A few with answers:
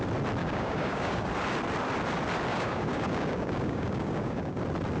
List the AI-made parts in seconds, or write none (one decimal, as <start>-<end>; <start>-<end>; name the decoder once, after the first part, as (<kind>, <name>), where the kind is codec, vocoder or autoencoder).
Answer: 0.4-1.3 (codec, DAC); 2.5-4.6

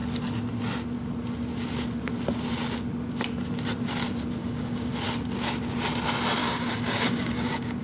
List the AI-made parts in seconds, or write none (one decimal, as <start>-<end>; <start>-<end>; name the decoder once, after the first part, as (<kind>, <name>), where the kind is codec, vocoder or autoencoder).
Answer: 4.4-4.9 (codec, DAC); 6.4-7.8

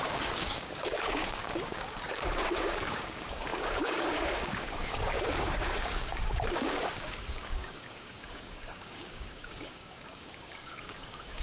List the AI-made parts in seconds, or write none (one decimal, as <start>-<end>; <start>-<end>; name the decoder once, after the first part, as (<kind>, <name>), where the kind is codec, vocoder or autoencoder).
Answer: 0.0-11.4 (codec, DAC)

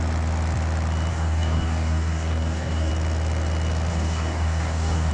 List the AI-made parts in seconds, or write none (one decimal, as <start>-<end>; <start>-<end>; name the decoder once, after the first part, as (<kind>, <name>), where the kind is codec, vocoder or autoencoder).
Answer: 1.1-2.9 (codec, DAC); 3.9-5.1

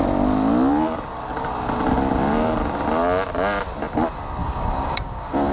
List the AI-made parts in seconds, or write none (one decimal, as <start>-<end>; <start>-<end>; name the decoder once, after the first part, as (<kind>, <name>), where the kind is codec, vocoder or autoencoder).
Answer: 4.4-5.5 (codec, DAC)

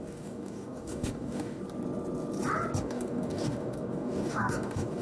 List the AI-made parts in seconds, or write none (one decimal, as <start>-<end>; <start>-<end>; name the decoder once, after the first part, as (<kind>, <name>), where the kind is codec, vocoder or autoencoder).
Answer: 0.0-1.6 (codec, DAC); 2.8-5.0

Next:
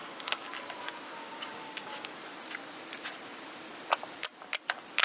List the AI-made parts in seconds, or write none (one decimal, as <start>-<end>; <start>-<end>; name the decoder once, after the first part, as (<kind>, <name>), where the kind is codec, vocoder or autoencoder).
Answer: 0.0-0.6 (codec, DAC); 1.2-2.2

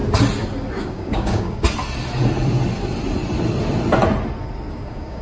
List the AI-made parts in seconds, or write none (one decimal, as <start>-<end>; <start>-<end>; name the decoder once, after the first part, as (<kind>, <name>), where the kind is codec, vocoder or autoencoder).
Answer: 0.8-1.6 (codec, DAC); 4.7-5.2